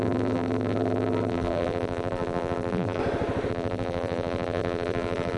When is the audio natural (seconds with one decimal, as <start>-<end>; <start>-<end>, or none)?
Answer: 3.0-3.5